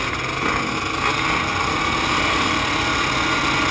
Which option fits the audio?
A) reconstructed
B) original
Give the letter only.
B